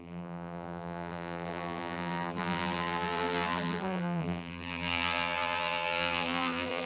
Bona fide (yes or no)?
no